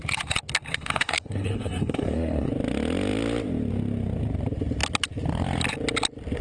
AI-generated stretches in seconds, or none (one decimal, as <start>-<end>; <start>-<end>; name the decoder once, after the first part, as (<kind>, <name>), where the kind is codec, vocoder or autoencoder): 0.7-2.5 (codec, SNAC)